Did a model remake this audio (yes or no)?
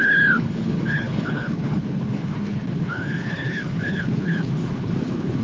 yes